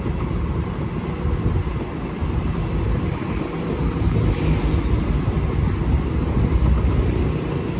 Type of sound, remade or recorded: recorded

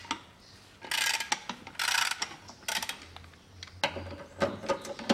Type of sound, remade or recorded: recorded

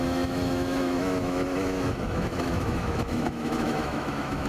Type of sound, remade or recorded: remade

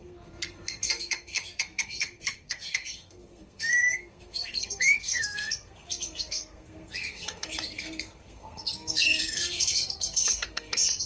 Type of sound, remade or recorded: remade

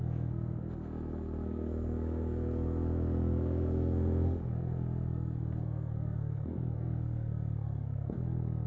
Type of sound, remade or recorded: remade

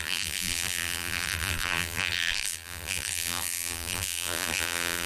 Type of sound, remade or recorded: remade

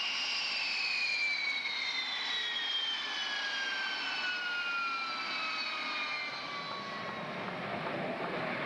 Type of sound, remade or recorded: recorded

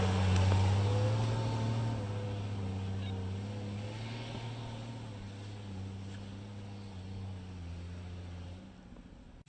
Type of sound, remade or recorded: recorded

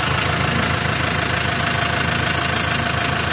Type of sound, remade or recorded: recorded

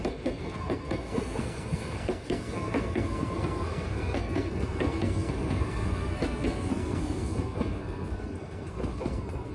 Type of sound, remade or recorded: remade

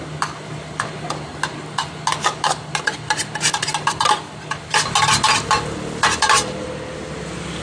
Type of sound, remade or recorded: recorded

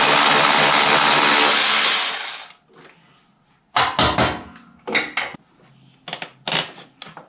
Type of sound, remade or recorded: recorded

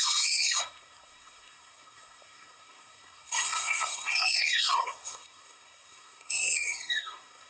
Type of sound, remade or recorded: remade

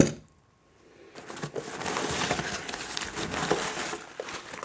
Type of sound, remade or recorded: recorded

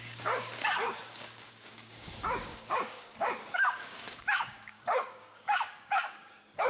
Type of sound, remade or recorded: remade